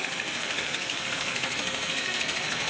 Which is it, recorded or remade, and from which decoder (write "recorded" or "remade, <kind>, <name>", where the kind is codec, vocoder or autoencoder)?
remade, codec, SNAC